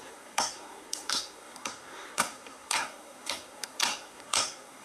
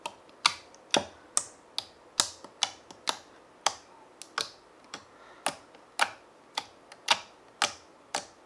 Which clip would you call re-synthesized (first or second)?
first